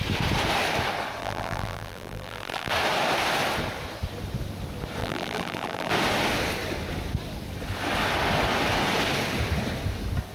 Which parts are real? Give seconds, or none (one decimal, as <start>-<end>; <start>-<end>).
0.0-1.2; 2.7-5.0; 5.9-10.3